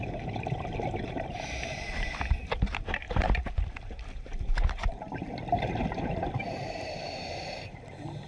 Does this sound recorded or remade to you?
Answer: remade